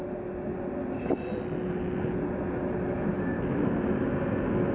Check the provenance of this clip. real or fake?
real